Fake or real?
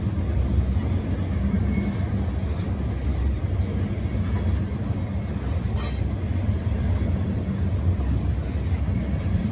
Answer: real